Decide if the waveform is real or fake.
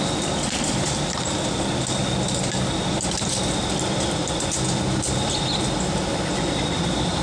real